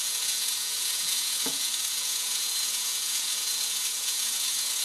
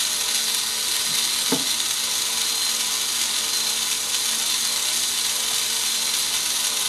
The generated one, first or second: first